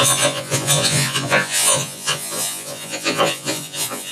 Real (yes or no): no